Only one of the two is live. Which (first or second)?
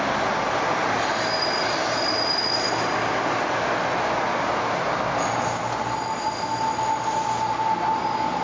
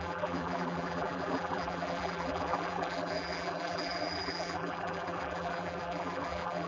first